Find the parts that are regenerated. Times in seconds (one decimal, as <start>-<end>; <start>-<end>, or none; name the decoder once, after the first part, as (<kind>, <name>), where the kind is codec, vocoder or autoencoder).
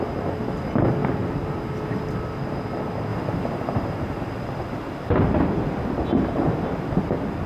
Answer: 1.0-1.6 (vocoder, BigVGAN v2); 3.1-5.1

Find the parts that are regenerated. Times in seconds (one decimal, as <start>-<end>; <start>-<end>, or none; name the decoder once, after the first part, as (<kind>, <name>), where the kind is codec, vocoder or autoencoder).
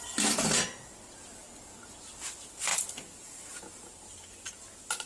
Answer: none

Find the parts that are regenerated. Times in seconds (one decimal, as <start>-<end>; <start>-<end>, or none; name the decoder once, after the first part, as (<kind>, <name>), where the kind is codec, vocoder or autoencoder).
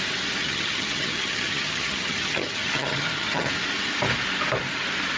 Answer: 0.4-3.5 (vocoder, HiFi-GAN)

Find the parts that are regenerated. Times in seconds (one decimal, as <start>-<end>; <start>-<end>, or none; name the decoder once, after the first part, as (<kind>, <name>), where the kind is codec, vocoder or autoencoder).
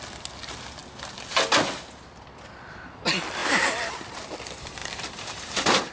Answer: 3.4-4.2 (vocoder, BigVGAN v2); 4.8-5.9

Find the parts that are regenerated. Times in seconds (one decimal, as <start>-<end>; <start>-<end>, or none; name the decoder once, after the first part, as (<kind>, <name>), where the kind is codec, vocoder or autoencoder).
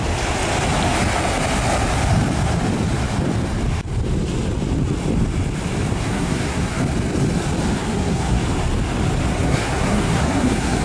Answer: 5.9-6.7 (codec, SNAC); 7.8-8.4; 9.3-10.8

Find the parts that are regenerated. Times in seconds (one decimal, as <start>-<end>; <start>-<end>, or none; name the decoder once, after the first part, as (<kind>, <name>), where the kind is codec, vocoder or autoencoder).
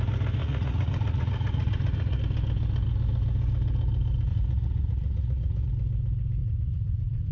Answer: 0.4-2.2 (vocoder, Vocos); 4.3-5.7; 6.4-7.3